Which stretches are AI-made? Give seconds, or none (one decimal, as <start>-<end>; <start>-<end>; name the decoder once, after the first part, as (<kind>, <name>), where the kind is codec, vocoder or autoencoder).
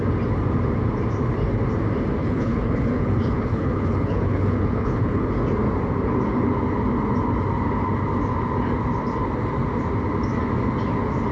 2.2-5.3 (codec, HILCodec)